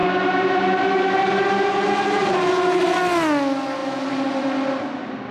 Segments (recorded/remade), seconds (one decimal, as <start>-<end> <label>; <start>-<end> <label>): 0.0-5.3 recorded